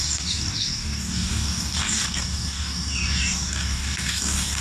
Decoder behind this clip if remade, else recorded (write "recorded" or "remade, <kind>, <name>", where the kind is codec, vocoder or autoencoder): remade, codec, DAC